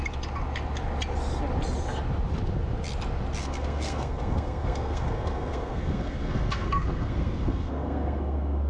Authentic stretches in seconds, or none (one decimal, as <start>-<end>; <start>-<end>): 0.0-3.4